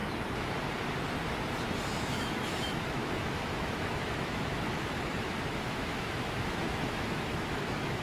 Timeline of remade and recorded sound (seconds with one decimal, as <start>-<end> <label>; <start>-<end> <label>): 0.0-2.0 recorded; 2.0-8.0 remade